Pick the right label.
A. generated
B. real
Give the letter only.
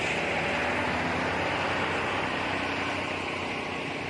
B